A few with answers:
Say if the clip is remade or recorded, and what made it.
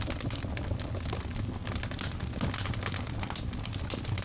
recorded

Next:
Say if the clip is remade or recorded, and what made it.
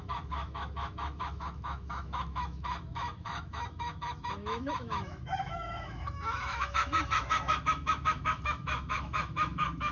remade, autoencoder, DAC-VAE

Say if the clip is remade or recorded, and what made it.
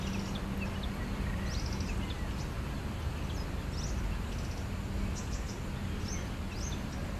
recorded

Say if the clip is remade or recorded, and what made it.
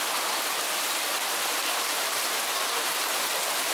remade, vocoder, BigVGAN v2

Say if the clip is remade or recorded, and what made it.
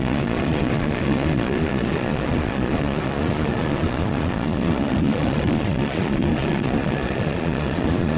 remade, vocoder, Vocos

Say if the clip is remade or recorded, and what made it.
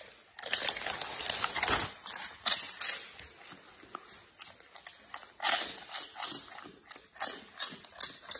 recorded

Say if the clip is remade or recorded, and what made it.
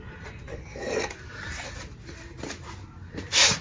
recorded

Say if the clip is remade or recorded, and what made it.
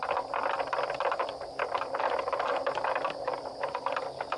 remade, vocoder, BigVGAN v2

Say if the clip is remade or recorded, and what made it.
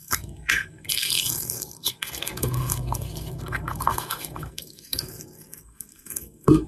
remade, codec, SNAC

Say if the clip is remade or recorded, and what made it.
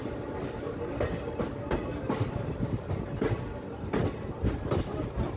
recorded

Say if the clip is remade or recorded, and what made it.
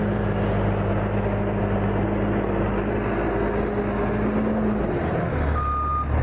recorded